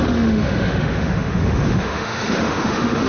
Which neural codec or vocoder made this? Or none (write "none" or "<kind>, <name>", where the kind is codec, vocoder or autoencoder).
autoencoder, DAC-VAE